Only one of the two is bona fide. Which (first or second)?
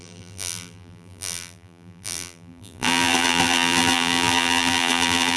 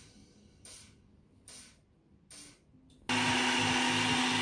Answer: second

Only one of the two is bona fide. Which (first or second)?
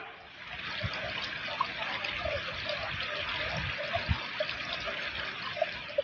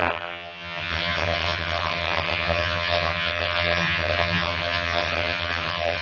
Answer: first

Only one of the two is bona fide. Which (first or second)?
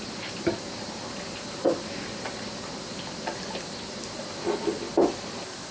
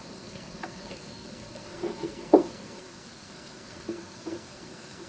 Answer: first